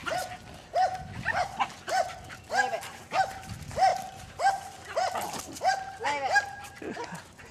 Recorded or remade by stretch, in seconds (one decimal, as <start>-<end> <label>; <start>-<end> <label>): 0.0-3.9 recorded; 3.9-4.5 remade; 4.5-7.5 recorded